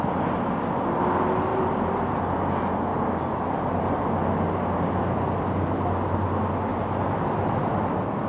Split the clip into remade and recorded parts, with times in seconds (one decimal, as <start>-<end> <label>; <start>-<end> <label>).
0.0-1.5 recorded; 1.5-2.2 remade; 2.2-2.9 recorded; 2.9-3.8 remade; 3.8-6.7 recorded; 6.7-7.7 remade; 7.7-8.3 recorded